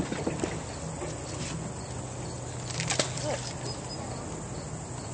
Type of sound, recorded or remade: recorded